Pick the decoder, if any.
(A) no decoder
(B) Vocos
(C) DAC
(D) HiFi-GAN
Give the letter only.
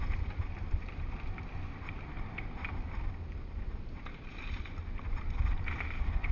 A